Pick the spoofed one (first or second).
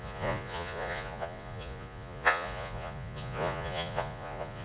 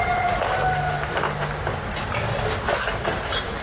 first